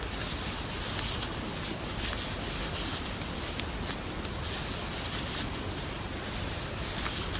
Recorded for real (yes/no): yes